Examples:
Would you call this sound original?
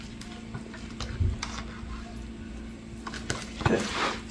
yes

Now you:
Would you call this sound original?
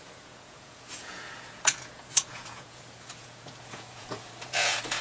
no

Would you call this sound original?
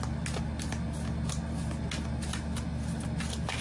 yes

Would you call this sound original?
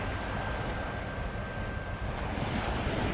yes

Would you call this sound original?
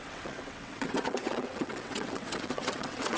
no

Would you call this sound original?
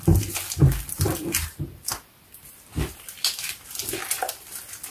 yes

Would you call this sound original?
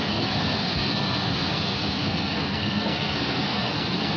no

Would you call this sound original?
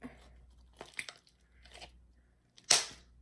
yes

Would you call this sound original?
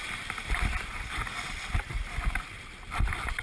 yes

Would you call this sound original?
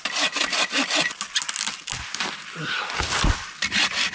yes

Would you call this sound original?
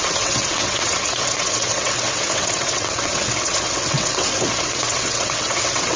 no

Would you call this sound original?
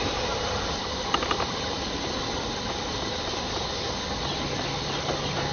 yes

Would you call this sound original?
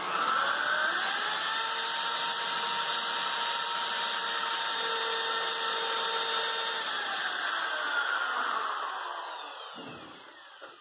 yes